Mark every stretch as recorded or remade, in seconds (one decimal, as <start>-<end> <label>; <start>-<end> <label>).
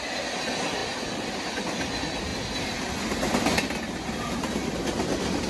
0.0-5.5 recorded